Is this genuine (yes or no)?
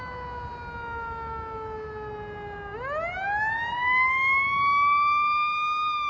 yes